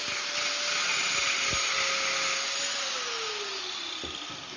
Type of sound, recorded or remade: recorded